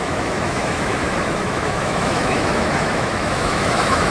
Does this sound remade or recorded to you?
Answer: remade